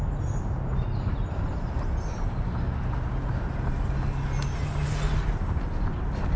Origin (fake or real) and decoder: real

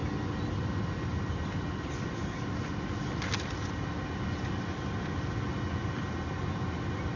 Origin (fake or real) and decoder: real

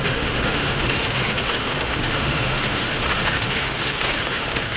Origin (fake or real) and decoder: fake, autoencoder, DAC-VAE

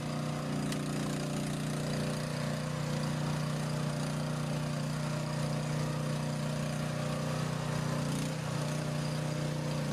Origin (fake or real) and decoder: real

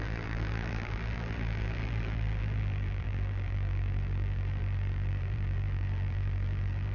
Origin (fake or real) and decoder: fake, vocoder, BigVGAN v2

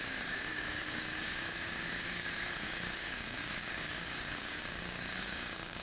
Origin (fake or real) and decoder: fake, codec, DAC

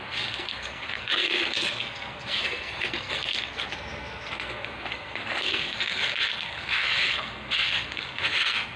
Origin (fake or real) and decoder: fake, codec, SNAC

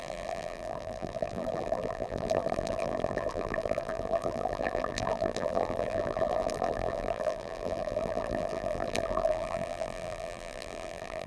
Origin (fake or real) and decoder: fake, vocoder, BigVGAN v2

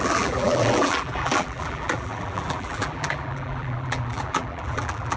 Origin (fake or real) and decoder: fake, vocoder, BigVGAN v2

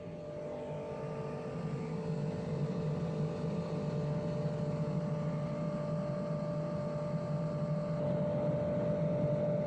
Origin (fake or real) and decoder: real